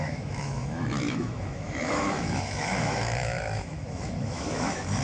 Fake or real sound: fake